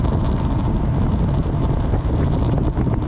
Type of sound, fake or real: real